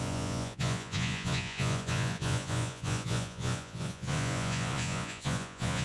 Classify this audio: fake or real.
fake